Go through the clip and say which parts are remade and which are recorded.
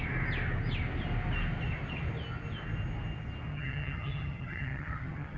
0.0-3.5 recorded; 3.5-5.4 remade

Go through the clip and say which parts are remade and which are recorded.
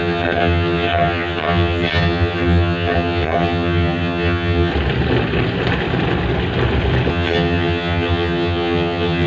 0.0-4.7 remade; 4.7-7.1 recorded; 7.1-9.3 remade